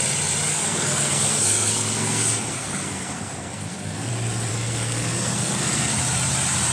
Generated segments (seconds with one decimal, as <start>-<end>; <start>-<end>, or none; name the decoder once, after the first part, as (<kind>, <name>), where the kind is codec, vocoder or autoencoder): 0.5-4.1 (codec, SNAC); 4.5-6.0